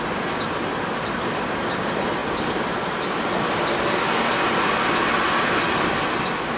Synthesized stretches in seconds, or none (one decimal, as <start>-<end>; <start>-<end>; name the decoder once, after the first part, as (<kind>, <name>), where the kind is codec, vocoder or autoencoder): none